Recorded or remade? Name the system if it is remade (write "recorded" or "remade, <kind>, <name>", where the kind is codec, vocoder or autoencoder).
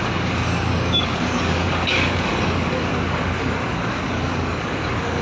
remade, codec, DAC